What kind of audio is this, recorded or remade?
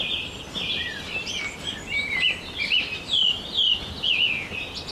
remade